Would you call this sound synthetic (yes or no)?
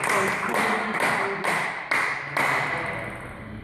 no